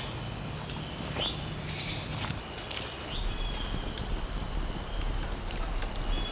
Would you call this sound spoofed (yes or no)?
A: no